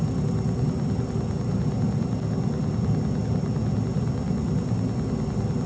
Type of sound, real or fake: real